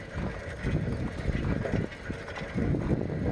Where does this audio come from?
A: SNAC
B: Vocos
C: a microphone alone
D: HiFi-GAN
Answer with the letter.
C